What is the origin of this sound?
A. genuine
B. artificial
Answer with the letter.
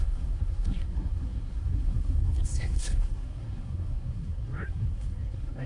B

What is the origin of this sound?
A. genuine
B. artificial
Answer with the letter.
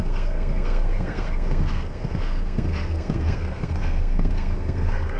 B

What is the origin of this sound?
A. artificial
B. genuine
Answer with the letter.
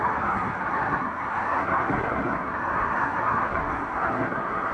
A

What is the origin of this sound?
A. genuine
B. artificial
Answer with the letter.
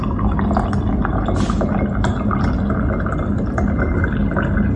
A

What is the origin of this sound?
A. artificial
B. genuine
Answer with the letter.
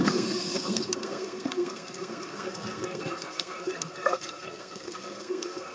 A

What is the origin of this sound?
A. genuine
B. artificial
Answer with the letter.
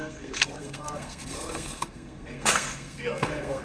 B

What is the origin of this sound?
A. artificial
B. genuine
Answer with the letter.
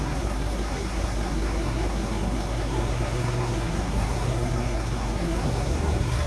A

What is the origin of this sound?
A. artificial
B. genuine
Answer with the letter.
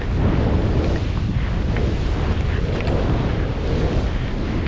B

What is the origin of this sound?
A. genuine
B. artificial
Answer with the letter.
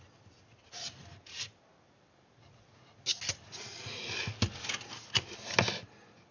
A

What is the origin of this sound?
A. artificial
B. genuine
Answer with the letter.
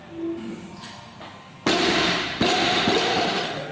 B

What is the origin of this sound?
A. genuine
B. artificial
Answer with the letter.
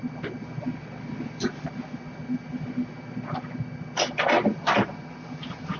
A